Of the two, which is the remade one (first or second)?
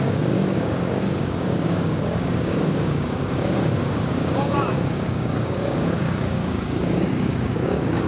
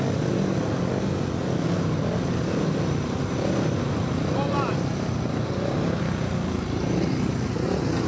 first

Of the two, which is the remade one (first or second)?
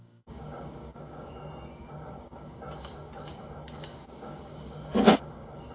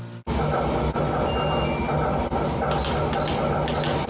first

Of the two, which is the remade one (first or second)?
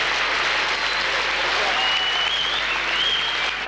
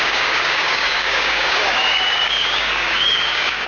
second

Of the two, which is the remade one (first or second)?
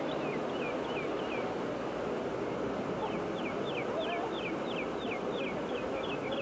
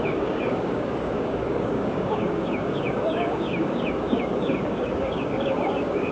second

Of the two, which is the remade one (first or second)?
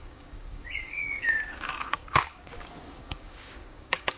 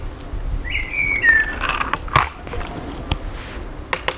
first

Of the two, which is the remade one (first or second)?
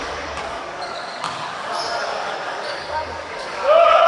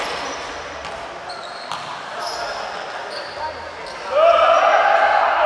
first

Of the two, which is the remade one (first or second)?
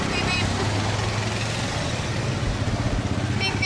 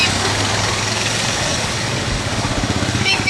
second